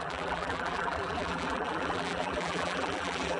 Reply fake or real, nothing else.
fake